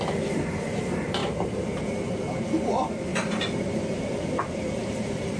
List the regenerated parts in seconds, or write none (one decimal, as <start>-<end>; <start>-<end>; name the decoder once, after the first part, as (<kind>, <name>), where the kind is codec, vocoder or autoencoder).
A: 1.2-2.7 (vocoder, BigVGAN v2); 3.1-5.4